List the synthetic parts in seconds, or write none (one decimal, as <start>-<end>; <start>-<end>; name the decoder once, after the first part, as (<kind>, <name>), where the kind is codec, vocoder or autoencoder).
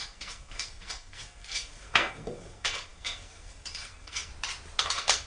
0.0-4.3 (codec, SNAC); 4.8-5.3